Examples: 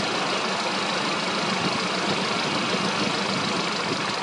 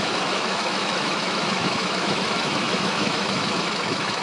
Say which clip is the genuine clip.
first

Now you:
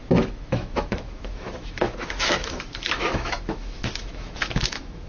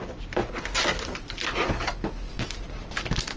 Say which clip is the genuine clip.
second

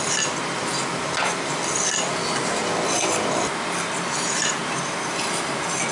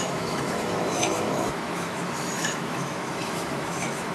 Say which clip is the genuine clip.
first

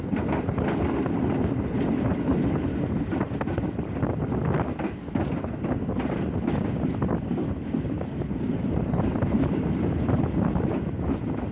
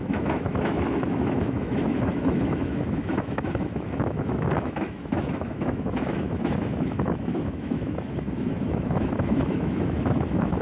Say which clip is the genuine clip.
first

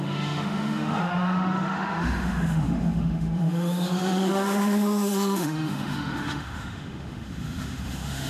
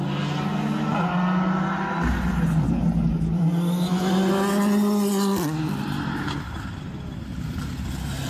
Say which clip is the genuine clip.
second